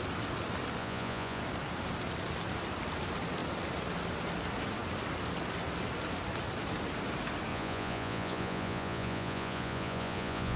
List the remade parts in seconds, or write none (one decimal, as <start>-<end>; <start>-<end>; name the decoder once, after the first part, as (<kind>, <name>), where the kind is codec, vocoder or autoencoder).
0.8-1.4 (vocoder, Vocos); 7.5-10.6